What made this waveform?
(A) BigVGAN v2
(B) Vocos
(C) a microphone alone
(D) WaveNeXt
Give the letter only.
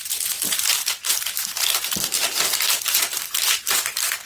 A